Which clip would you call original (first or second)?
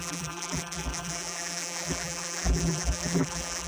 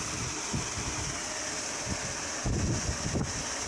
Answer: second